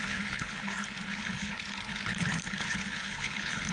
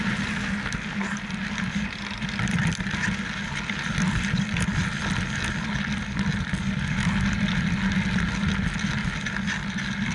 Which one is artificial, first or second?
first